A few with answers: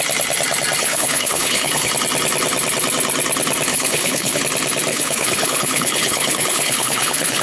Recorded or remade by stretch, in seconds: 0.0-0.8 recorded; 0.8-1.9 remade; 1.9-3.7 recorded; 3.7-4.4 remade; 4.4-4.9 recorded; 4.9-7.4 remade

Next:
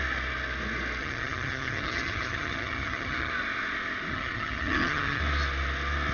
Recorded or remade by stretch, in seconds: 0.0-1.0 recorded; 1.0-3.3 remade; 3.3-4.1 recorded; 4.1-5.2 remade; 5.2-6.1 recorded

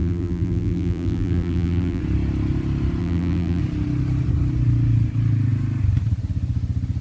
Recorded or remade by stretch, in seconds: 0.0-2.0 remade; 2.0-3.0 recorded; 3.0-3.6 remade; 3.6-7.0 recorded